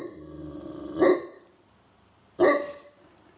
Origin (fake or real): real